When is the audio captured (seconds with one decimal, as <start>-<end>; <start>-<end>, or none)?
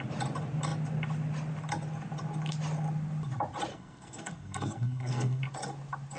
0.0-3.7; 5.4-6.2